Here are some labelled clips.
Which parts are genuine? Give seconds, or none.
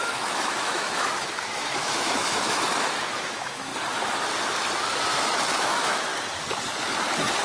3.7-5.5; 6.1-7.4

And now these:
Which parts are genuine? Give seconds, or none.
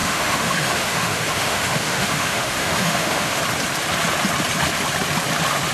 3.4-5.7